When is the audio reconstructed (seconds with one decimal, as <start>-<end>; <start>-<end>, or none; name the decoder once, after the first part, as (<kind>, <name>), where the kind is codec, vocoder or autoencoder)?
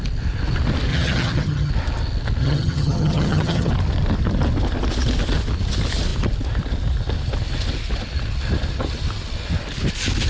0.9-1.7 (vocoder, HiFi-GAN); 2.4-3.7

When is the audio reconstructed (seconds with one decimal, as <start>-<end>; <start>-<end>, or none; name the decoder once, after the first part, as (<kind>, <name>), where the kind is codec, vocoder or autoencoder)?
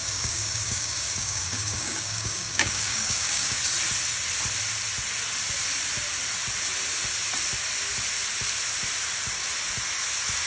0.0-3.6 (codec, DAC)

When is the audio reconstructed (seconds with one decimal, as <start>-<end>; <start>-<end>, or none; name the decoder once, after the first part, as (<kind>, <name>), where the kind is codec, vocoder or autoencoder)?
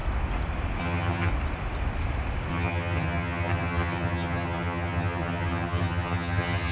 0.8-1.3 (vocoder, HiFi-GAN); 2.5-6.7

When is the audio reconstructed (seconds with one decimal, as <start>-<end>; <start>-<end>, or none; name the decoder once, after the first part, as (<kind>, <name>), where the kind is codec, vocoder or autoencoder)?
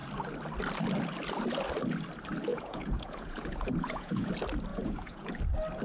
2.5-4.3 (vocoder, Vocos); 4.7-5.3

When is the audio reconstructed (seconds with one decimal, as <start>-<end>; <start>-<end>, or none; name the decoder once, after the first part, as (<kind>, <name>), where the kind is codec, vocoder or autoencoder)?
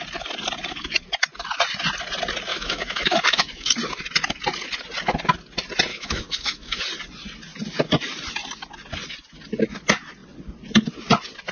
2.5-3.7 (autoencoder, DAC-VAE); 5.9-6.8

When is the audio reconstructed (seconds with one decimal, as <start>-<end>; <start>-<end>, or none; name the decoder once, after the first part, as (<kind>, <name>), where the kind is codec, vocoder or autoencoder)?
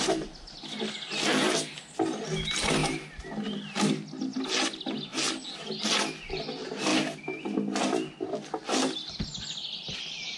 none